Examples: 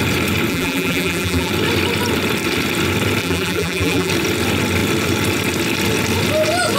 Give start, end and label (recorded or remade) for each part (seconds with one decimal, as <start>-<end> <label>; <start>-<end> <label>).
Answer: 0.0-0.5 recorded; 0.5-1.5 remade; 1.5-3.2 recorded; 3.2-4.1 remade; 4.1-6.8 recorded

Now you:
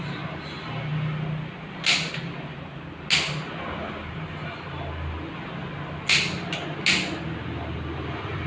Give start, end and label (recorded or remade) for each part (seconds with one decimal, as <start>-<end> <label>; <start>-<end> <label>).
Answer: 0.0-8.5 recorded

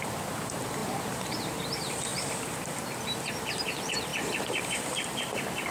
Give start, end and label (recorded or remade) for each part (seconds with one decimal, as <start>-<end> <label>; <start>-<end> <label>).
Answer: 0.0-4.1 remade; 4.1-4.7 recorded; 4.7-5.7 remade

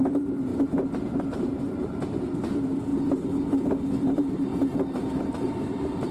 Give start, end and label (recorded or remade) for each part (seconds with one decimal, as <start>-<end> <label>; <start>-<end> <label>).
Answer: 0.0-2.9 remade; 2.9-4.1 recorded; 4.1-4.5 remade; 4.5-5.2 recorded; 5.2-6.1 remade